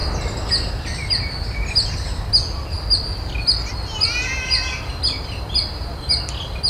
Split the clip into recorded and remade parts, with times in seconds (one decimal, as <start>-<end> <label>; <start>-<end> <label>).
0.0-6.7 recorded